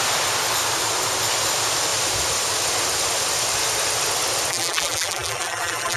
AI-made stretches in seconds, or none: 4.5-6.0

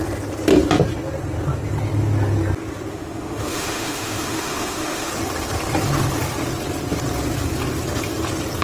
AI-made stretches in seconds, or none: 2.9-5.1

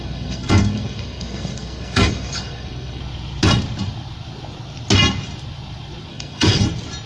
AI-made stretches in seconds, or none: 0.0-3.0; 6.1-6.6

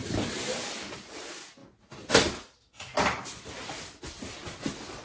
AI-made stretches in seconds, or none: none